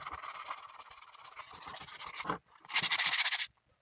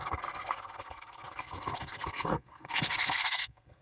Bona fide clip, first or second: first